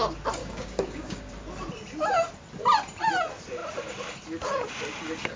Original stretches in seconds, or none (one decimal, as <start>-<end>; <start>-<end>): 0.0-0.4; 1.3-5.4